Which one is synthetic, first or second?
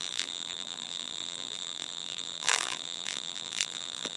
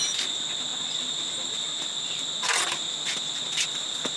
first